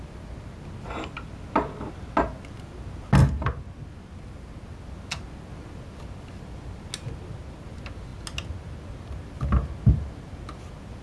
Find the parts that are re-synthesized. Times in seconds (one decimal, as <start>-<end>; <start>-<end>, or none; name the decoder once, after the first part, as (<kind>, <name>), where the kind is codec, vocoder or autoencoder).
none